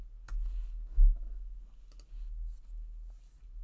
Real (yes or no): yes